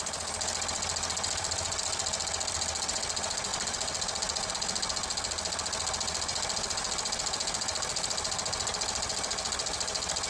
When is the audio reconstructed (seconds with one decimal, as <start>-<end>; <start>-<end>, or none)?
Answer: none